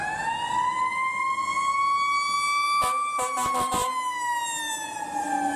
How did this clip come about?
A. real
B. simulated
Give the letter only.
A